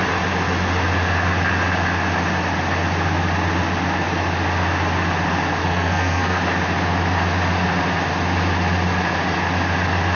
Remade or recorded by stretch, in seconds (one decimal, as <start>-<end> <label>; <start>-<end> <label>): 0.0-5.6 recorded; 5.6-6.4 remade; 6.4-10.1 recorded